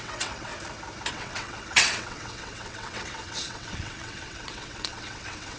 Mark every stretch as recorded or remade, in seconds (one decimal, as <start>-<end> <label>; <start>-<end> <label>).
0.0-0.5 remade; 0.5-1.1 recorded; 1.1-5.6 remade